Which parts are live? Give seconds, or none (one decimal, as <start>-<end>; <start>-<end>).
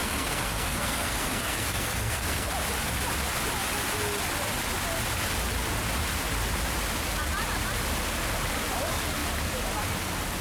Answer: 2.5-10.4